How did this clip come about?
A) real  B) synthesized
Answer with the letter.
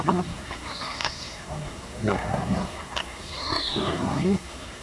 B